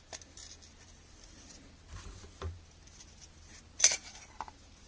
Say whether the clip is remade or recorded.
recorded